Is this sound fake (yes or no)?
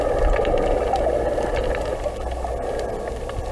no